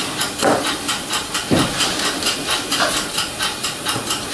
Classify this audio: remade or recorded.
remade